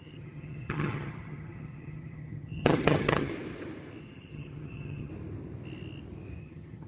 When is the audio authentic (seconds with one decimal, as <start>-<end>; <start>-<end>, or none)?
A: 3.3-4.0; 5.1-6.4